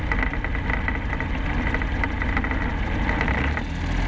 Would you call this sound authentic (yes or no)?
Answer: yes